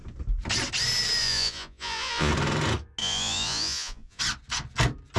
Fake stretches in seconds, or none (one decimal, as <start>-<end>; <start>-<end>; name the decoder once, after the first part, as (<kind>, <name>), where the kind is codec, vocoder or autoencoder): 1.2-2.3 (vocoder, Vocos); 3.0-4.2